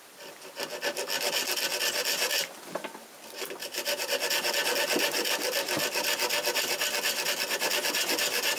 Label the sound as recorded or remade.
recorded